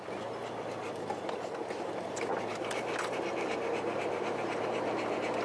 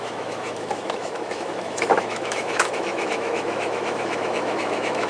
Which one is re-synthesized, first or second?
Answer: second